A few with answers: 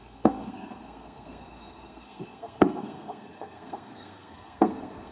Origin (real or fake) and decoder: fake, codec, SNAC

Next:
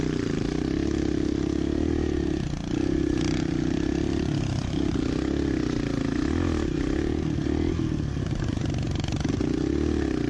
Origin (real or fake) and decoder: real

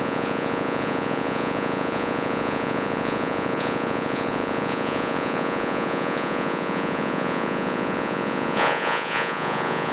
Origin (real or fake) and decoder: fake, vocoder, Vocos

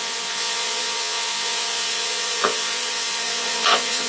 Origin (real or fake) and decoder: fake, vocoder, Vocos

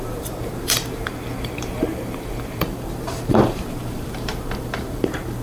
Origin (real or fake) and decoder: fake, vocoder, BigVGAN v2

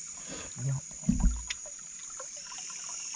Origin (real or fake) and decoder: real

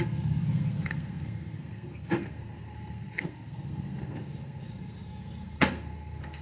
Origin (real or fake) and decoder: fake, codec, SNAC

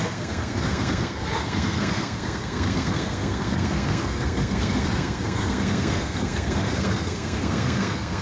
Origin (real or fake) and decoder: fake, codec, SNAC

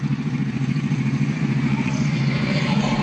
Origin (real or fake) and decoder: fake, vocoder, Vocos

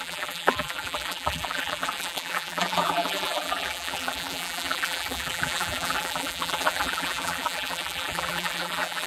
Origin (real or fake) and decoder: fake, vocoder, BigVGAN v2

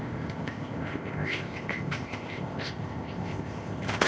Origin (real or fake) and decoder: fake, codec, ZipCodec